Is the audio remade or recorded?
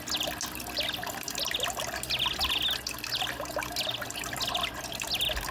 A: recorded